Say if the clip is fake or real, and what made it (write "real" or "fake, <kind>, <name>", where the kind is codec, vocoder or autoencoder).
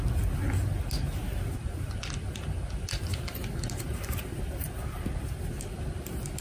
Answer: real